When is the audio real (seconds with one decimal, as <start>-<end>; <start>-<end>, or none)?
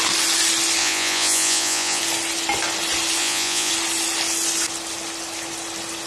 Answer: 0.0-0.8; 2.0-3.2; 3.7-6.1